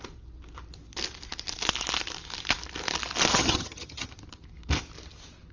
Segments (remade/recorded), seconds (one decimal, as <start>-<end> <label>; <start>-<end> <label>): 0.0-3.3 recorded; 3.3-4.1 remade; 4.1-5.5 recorded